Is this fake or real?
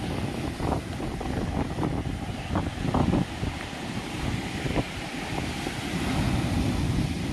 real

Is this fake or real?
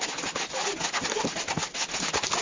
real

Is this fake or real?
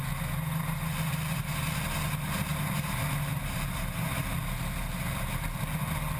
real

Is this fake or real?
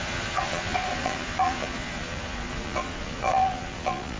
fake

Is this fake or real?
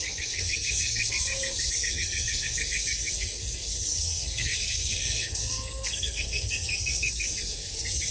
fake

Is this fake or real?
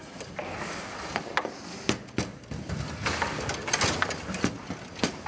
real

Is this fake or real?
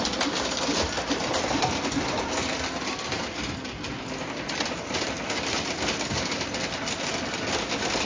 real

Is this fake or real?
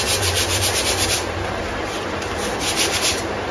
fake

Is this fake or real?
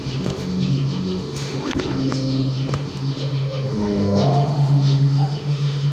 fake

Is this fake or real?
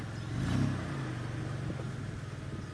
real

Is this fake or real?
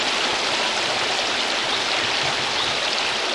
real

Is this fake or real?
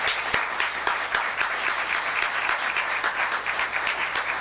fake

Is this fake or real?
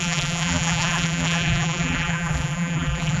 fake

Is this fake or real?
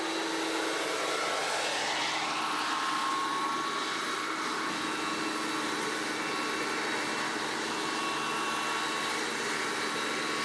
real